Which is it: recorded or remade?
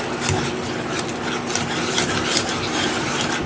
recorded